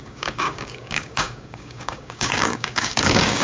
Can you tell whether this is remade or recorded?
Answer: remade